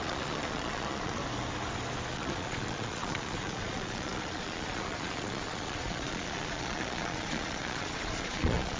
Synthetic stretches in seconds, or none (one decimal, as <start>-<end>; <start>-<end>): 0.0-1.2; 2.1-8.8